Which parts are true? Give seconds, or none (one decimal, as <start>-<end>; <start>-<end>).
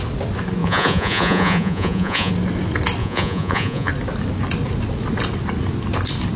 0.0-0.6; 2.3-3.0; 3.9-6.4